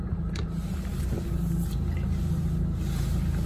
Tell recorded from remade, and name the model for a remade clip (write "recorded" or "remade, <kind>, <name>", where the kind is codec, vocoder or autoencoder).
recorded